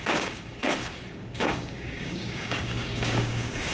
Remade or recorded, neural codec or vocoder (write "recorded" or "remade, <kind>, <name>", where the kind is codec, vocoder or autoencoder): remade, codec, DAC